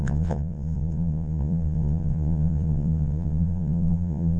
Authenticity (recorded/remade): remade